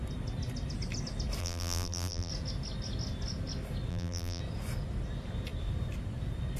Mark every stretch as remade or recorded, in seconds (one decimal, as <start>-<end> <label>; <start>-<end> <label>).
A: 0.0-1.4 recorded; 1.4-2.3 remade; 2.3-3.9 recorded; 3.9-4.4 remade; 4.4-6.6 recorded